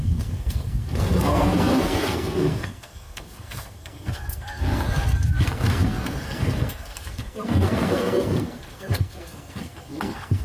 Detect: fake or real fake